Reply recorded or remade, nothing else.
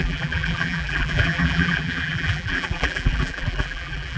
remade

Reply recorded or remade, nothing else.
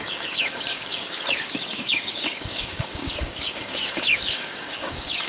remade